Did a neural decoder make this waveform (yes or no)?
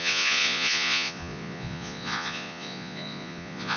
yes